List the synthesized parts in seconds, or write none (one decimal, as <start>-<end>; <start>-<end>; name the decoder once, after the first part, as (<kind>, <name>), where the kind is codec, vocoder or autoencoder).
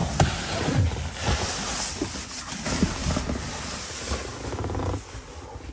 4.3-4.8 (codec, DAC)